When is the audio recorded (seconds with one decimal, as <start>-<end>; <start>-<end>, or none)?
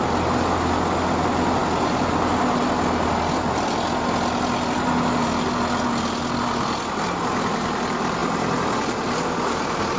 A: 0.0-10.0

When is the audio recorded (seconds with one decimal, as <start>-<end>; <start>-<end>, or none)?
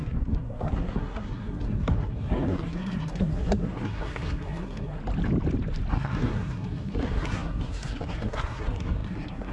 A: 5.0-5.9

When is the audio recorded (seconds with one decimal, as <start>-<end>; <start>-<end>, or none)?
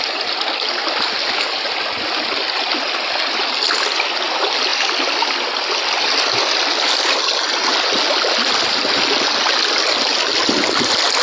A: 0.0-11.2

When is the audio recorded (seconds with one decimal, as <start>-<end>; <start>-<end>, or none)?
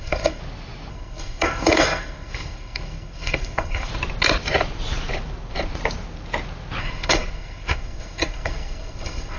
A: 0.4-0.9; 3.9-6.8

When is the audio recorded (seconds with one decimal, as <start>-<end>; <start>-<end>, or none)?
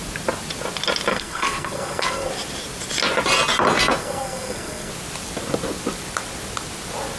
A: 0.0-1.1; 2.3-4.0; 4.9-7.2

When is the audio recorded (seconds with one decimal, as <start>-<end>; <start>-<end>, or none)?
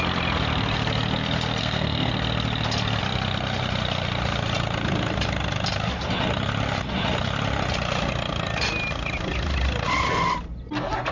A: 0.0-1.6; 2.1-11.1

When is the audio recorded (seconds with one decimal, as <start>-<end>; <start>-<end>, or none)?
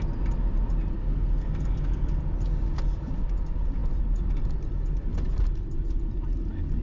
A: 0.0-1.0; 2.2-6.8